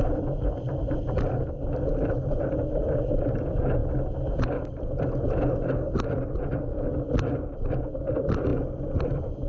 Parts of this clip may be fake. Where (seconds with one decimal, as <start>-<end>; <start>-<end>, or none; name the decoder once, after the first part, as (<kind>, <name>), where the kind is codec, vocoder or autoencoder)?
0.0-9.5 (vocoder, BigVGAN v2)